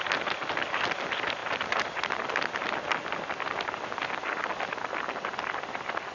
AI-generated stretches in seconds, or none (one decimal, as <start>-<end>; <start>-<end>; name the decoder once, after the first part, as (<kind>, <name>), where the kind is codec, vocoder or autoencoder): none